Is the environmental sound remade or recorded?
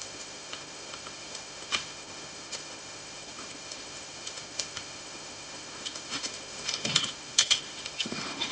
remade